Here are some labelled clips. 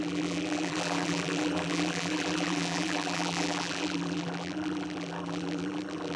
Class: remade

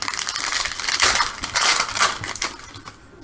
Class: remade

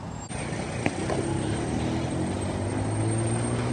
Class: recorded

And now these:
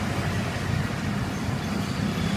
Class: recorded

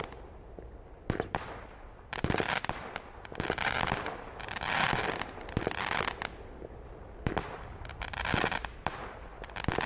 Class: remade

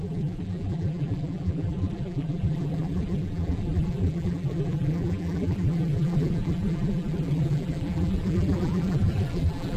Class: remade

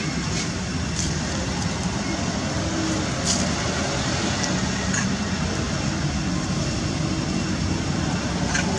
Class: recorded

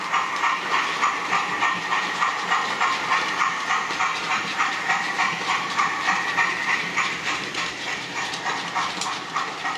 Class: remade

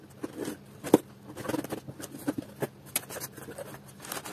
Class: recorded